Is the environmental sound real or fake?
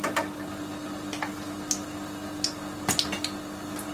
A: real